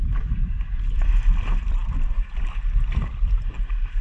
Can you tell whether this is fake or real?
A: real